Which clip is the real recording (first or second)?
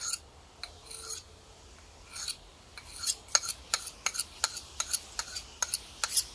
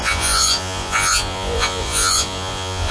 first